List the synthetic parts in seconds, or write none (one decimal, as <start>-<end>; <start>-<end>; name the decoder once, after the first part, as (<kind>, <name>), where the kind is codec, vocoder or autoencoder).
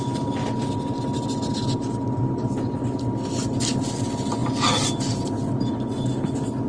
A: none